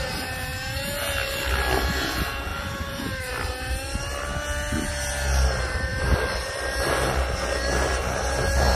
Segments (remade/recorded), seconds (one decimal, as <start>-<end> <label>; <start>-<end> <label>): 0.0-2.5 recorded; 2.5-3.2 remade; 3.2-5.9 recorded; 5.9-6.9 remade; 6.9-8.8 recorded